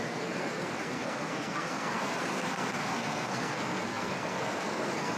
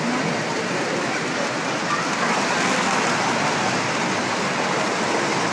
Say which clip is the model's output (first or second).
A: first